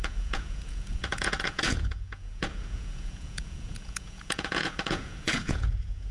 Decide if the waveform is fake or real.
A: fake